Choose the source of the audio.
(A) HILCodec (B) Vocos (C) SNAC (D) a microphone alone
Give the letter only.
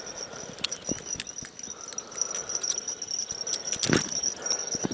D